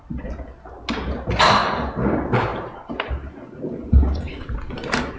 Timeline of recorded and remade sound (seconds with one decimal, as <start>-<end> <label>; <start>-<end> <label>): 0.0-2.5 recorded; 2.5-3.3 remade; 3.3-3.9 recorded; 3.9-5.2 remade